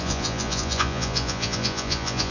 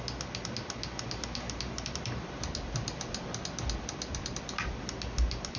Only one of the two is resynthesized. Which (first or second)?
first